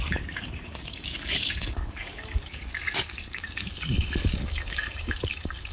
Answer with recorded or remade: remade